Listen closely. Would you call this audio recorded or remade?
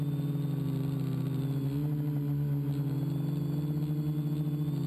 recorded